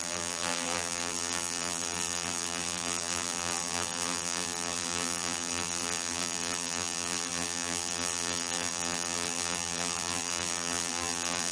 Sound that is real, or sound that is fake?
fake